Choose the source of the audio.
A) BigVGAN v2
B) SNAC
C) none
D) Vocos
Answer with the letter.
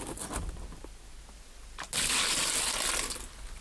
C